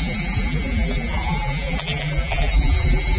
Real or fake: fake